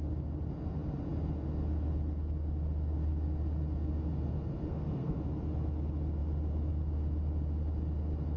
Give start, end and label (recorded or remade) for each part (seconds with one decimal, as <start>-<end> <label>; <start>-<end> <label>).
0.0-4.7 recorded; 4.7-5.2 remade; 5.2-8.4 recorded

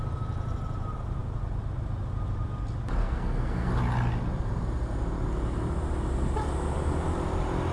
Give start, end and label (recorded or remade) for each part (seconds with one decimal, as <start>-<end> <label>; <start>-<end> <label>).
0.0-3.0 recorded; 3.0-3.7 remade; 3.7-7.7 recorded

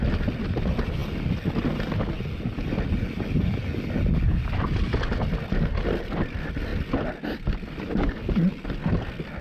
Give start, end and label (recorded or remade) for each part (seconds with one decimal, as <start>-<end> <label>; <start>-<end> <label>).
0.0-9.4 recorded

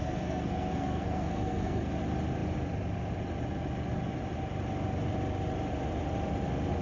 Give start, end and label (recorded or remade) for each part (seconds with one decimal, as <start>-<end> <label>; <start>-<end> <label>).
0.0-1.9 remade; 1.9-6.8 recorded

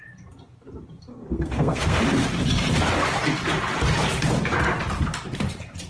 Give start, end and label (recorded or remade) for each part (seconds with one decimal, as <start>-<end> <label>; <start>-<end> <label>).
0.0-1.1 recorded; 1.1-2.0 remade; 2.0-5.9 recorded

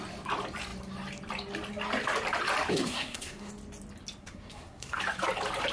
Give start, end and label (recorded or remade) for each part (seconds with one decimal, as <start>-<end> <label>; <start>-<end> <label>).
0.0-2.7 recorded; 2.7-3.5 remade; 3.5-4.2 recorded; 4.2-5.0 remade; 5.0-5.7 recorded